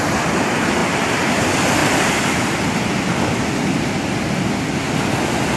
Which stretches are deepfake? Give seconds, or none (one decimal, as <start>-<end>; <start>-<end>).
1.8-2.5